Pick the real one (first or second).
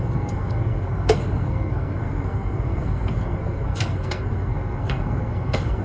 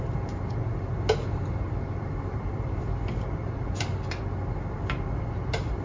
second